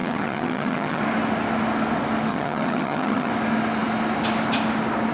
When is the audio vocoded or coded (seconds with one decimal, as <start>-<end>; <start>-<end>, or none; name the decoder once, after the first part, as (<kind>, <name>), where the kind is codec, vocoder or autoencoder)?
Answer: 0.0-1.0 (vocoder, HiFi-GAN); 2.3-3.3